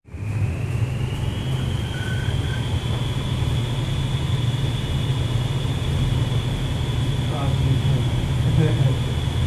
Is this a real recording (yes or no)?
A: yes